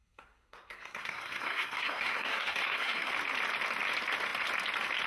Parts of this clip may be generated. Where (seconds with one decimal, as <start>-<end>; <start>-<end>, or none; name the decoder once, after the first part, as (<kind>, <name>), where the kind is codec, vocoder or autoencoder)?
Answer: 0.0-3.1 (codec, SNAC)